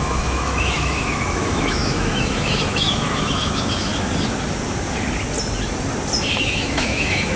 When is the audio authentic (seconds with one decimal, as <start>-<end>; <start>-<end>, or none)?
3.9-6.4

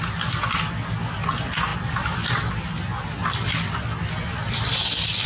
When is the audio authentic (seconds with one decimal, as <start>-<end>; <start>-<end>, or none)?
0.0-5.3

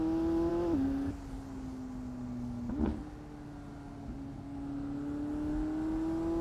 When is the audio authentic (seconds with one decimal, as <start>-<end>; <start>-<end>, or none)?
0.0-6.4

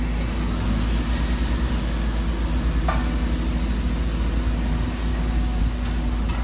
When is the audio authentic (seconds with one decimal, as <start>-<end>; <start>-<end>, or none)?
0.0-5.1; 5.6-6.4

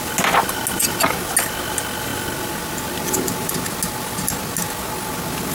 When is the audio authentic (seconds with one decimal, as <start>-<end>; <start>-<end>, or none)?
0.0-5.5